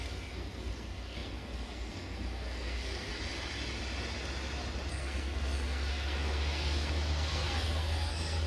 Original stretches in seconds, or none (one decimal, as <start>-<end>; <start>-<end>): 3.1-4.9